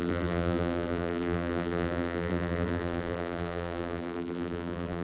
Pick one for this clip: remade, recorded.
remade